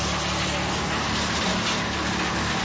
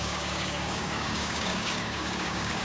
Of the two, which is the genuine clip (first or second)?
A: first